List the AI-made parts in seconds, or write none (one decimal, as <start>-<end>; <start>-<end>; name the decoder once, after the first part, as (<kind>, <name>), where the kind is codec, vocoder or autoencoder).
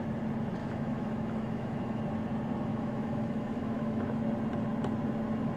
0.6-2.0 (autoencoder, DAC-VAE); 2.7-4.2